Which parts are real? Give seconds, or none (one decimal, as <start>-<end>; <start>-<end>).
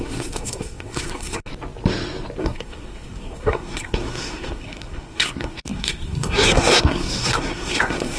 1.5-2.4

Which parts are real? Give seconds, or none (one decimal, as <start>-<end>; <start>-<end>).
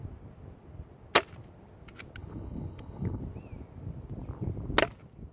0.0-2.2; 3.2-5.3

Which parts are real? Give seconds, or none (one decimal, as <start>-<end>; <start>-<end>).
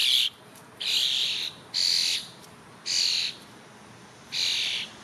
0.0-5.0